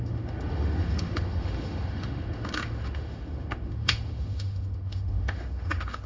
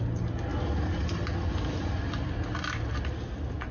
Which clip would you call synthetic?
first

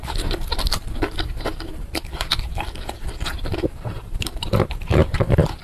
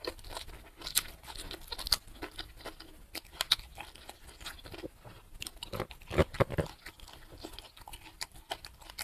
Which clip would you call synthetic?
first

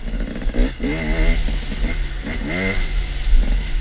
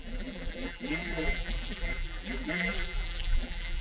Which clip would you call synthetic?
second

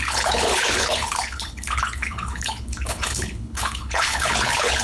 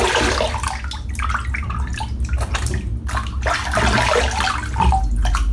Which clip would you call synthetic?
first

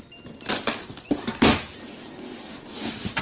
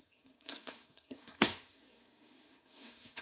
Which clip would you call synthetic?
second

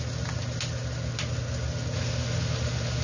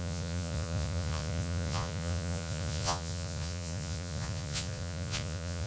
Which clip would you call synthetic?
second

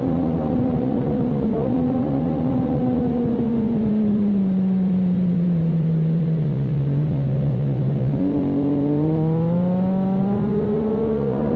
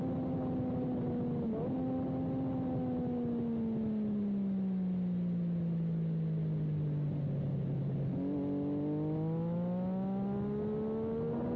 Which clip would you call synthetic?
first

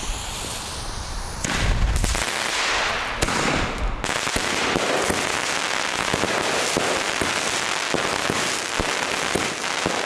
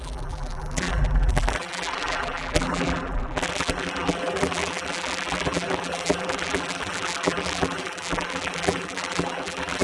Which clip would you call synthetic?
second